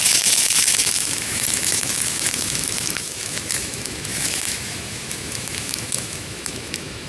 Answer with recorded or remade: remade